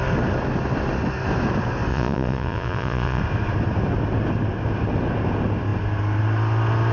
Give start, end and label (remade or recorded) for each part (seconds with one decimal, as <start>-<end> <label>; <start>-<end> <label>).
0.0-1.9 recorded; 1.9-3.2 remade; 3.2-6.9 recorded